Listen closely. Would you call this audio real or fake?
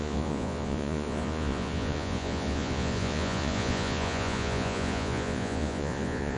fake